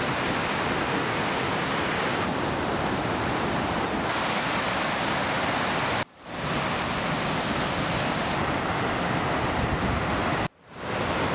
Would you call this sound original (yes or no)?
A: yes